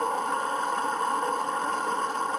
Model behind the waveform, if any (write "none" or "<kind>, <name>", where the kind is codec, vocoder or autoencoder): none